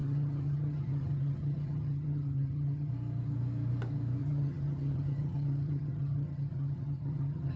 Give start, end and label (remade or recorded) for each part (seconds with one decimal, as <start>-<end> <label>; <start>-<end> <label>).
0.0-2.9 remade; 2.9-4.2 recorded; 4.2-7.6 remade